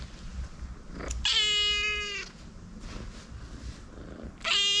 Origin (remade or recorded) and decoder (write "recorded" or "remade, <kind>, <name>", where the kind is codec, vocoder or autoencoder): recorded